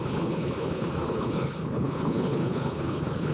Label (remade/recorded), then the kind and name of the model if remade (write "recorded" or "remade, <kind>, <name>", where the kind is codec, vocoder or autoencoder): remade, codec, HILCodec